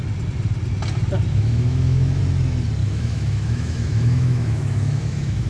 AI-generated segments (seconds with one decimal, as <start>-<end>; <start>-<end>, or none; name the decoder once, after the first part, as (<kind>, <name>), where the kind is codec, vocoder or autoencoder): 1.3-2.2 (autoencoder, DAC-VAE); 2.8-5.5